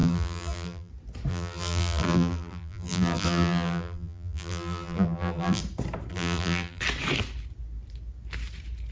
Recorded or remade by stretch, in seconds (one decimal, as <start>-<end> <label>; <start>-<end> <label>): 0.0-0.9 remade; 0.9-1.3 recorded; 1.3-5.6 remade; 5.6-6.1 recorded; 6.1-6.8 remade; 6.8-8.9 recorded